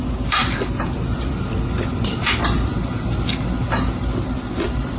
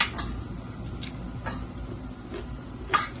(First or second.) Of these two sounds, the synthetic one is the first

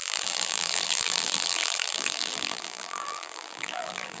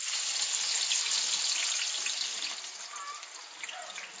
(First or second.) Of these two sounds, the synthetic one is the first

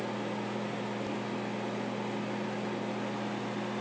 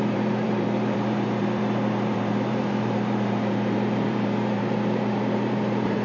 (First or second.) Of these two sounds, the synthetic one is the second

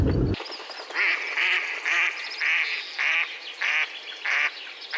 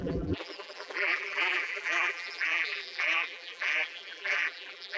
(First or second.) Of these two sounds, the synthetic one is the second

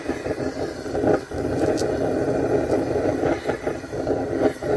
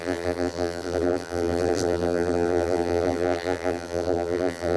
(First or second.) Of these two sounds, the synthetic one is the second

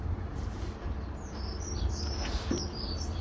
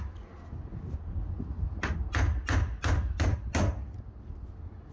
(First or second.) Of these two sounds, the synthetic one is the first